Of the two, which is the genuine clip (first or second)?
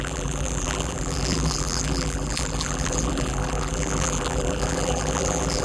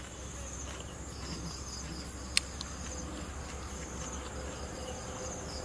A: second